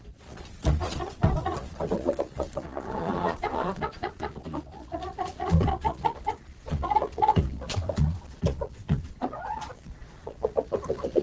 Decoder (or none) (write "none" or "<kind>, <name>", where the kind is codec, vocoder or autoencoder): vocoder, Vocos